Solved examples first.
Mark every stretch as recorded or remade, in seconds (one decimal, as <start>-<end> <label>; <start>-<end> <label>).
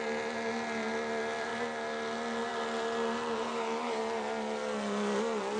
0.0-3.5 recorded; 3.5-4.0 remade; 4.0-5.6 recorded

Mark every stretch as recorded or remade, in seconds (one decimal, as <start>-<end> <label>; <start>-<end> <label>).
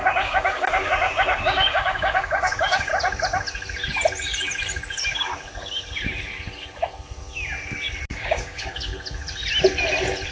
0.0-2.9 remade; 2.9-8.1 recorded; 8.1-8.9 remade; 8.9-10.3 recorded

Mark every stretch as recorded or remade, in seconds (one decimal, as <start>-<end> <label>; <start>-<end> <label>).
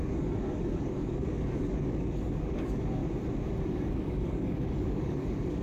0.0-3.0 remade; 3.0-3.6 recorded; 3.6-5.6 remade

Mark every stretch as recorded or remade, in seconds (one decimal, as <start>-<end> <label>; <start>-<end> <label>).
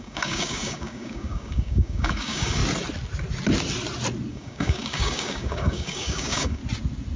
0.0-2.6 remade; 2.6-4.3 recorded; 4.3-6.6 remade; 6.6-7.2 recorded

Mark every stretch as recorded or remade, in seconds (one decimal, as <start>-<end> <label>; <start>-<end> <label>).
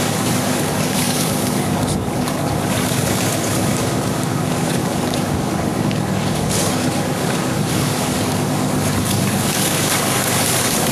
0.0-10.9 remade